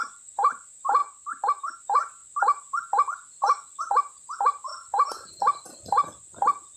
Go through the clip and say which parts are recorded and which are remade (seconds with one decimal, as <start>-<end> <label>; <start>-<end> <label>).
0.0-6.8 recorded